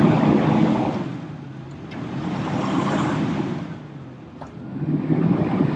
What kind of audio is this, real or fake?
real